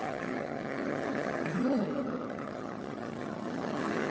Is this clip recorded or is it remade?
remade